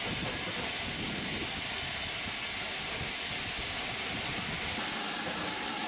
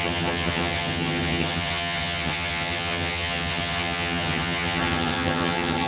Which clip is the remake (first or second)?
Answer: second